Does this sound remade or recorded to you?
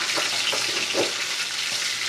recorded